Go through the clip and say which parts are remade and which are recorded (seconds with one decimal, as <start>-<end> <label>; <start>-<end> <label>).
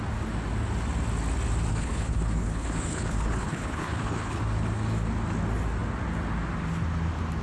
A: 0.0-1.7 recorded; 1.7-4.4 remade; 4.4-7.4 recorded